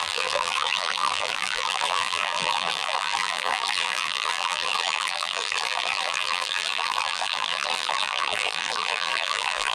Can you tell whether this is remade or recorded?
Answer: remade